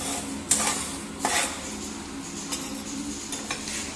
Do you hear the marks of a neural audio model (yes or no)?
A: no